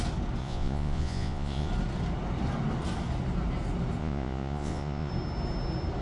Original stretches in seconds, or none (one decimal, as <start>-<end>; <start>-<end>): 0.0-0.4; 1.7-4.0; 5.1-6.0